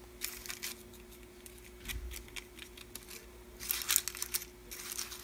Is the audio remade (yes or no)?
no